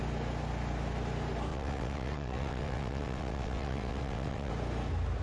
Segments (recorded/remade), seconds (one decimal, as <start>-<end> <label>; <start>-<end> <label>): 0.0-1.5 recorded; 1.5-4.5 remade; 4.5-5.2 recorded